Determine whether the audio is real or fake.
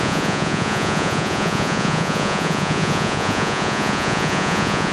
fake